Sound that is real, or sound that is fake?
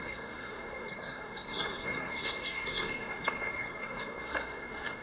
fake